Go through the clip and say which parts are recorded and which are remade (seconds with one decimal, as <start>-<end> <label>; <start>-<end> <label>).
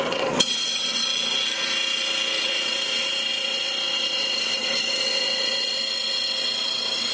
0.0-1.0 remade; 1.0-2.4 recorded; 2.4-7.1 remade